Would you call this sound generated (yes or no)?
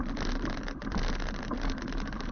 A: no